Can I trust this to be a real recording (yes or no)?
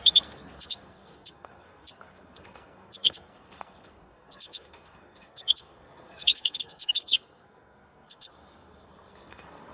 no